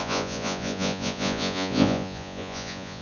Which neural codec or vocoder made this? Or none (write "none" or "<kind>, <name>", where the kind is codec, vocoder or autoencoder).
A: vocoder, Vocos